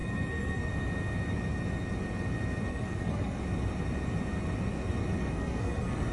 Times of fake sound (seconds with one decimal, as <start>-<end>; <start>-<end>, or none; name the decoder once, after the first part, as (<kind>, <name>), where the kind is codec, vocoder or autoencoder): 0.0-0.7 (codec, SNAC); 2.7-3.4; 5.2-6.1